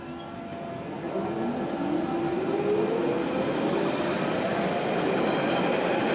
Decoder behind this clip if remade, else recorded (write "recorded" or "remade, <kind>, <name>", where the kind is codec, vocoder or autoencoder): recorded